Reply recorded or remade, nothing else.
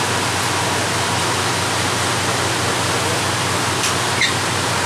recorded